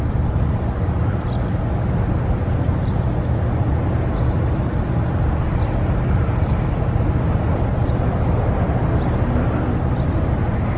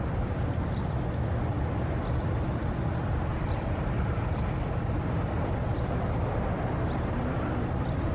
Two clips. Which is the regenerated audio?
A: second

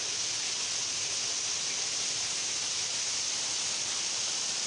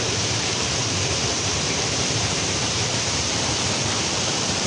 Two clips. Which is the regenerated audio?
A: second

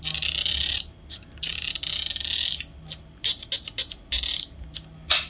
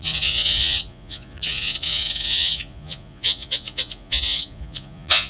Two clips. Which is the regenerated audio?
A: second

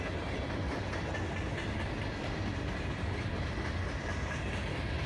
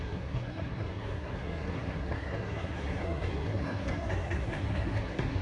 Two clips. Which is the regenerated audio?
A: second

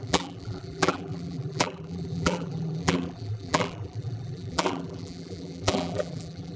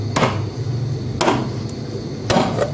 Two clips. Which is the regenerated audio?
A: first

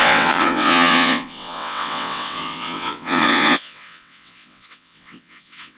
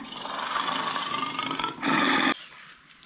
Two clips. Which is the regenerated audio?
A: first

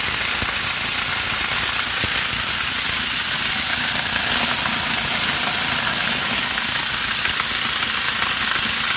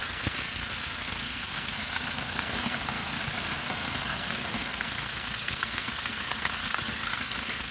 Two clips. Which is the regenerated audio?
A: second